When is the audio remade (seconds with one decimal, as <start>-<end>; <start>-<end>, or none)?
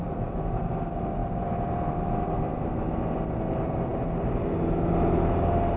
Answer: none